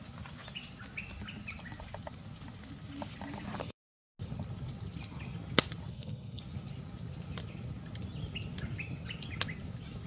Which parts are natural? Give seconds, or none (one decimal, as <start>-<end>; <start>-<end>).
0.0-3.6; 4.1-5.9; 6.4-10.1